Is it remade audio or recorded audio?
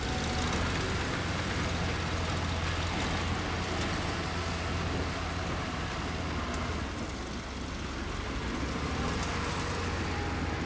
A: recorded